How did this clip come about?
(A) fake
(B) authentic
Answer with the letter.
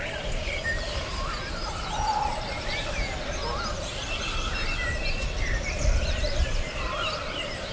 A